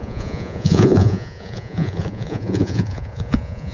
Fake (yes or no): yes